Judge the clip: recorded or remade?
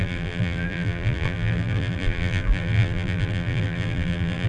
remade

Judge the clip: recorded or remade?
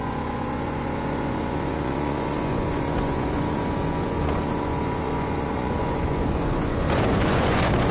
remade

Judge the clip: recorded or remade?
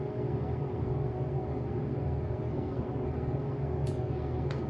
remade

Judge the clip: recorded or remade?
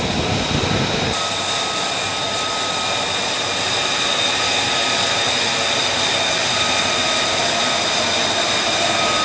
recorded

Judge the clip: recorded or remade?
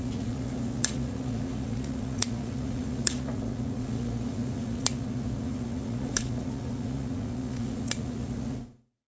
remade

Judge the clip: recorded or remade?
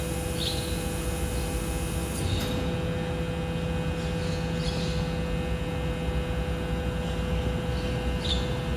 recorded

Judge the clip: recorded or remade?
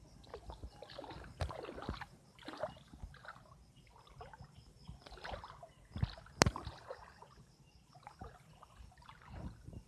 recorded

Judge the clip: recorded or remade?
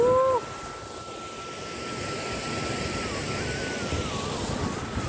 recorded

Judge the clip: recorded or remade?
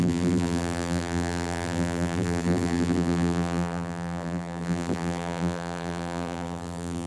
remade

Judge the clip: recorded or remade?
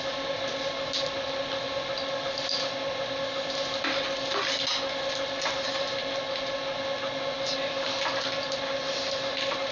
recorded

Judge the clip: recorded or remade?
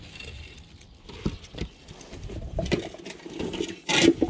recorded